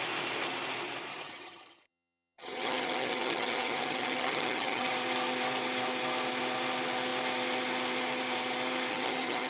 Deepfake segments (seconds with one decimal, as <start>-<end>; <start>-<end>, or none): 1.1-4.9; 8.9-9.5